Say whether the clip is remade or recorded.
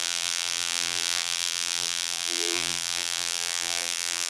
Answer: remade